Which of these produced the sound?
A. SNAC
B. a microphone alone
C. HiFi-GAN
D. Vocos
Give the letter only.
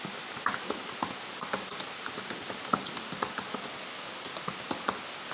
B